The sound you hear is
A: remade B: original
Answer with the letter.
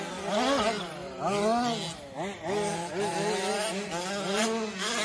B